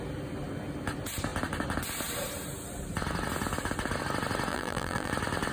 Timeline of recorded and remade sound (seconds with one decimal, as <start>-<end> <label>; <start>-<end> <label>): 0.0-4.5 recorded; 4.5-5.1 remade; 5.1-5.5 recorded